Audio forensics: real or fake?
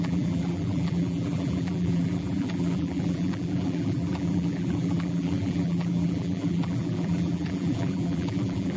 fake